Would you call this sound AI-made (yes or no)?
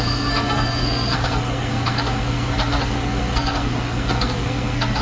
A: yes